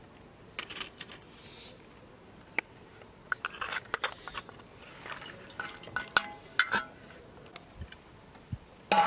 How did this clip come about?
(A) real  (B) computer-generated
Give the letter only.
A